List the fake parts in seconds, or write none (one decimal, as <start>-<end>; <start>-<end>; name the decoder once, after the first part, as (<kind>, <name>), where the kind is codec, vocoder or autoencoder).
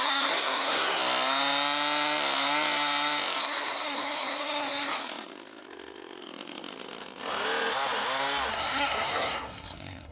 0.0-1.0 (codec, SNAC); 3.4-5.1; 8.5-10.1